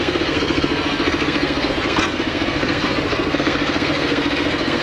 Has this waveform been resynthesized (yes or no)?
yes